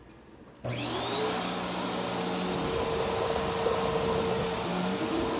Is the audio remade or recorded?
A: recorded